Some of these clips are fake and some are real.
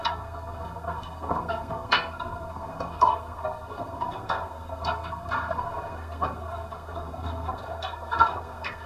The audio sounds fake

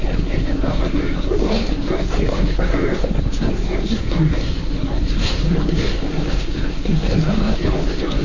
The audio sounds fake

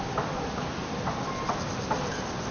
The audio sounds real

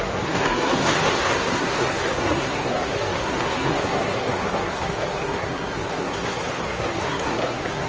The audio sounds fake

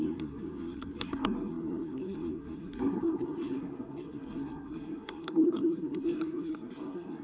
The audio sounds fake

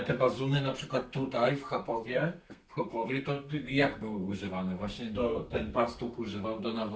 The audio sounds fake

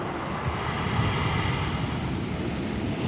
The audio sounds real